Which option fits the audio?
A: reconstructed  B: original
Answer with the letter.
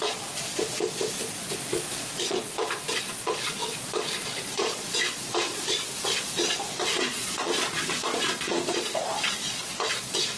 A